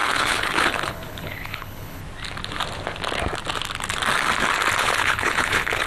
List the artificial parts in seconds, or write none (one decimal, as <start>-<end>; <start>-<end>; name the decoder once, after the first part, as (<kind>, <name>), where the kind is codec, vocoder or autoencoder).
0.0-2.0 (codec, HILCodec); 4.8-5.9